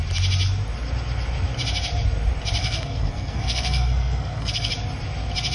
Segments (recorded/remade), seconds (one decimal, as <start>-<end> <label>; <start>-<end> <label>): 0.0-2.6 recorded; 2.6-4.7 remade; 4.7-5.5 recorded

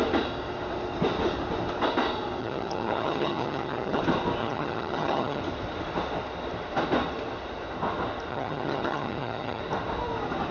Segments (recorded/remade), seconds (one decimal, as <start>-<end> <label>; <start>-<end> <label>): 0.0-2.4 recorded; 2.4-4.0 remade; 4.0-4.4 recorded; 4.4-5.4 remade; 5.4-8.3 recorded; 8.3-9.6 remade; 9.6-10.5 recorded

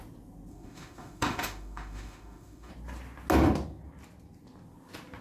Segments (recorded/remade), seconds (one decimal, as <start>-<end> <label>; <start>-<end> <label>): 0.0-0.5 recorded; 0.5-2.7 remade; 2.7-5.2 recorded